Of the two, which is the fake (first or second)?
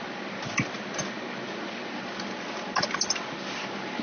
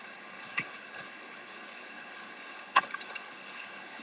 second